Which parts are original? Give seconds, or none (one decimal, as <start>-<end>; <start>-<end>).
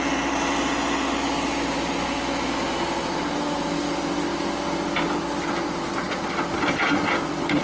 0.0-7.6